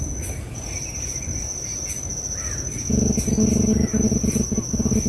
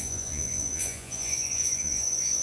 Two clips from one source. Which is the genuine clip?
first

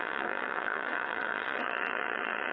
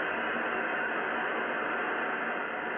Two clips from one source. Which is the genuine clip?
second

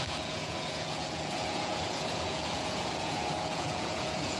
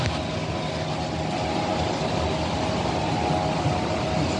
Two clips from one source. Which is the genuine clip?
second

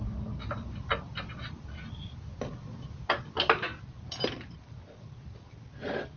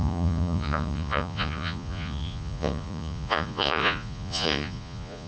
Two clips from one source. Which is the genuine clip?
first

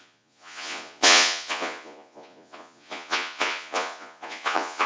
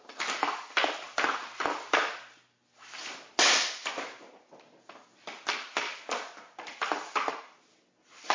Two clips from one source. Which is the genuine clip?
second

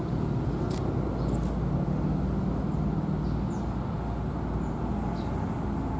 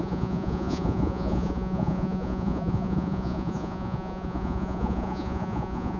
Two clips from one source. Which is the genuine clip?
first